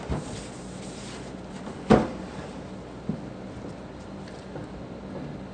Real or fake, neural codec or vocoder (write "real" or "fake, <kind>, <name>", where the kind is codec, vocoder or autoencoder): real